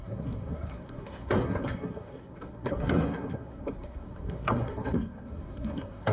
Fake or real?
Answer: fake